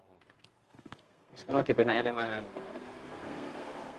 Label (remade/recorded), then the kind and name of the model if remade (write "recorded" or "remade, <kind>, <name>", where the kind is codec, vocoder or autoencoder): remade, codec, SNAC